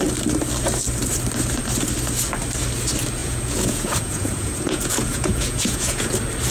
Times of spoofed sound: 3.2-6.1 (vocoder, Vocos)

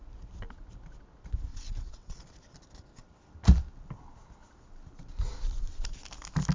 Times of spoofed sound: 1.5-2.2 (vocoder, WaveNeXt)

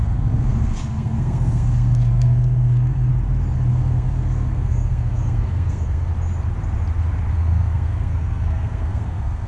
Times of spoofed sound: 0.0-3.1 (codec, SNAC); 3.7-6.1; 7.3-9.5

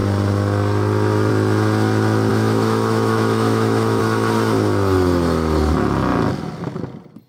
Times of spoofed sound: 2.3-4.0 (autoencoder, DAC-VAE)

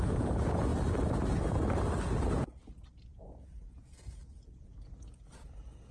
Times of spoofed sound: 0.0-0.7 (vocoder, Vocos); 2.4-5.9

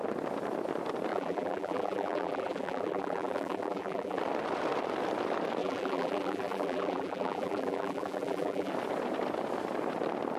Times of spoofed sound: 1.1-4.2 (vocoder, BigVGAN v2); 5.6-8.7